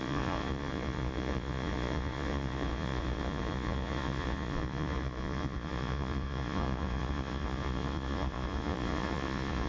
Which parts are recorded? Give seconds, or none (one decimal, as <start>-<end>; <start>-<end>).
none